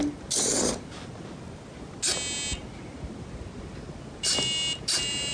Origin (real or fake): real